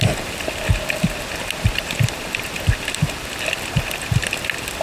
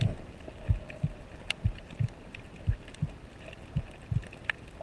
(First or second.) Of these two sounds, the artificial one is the first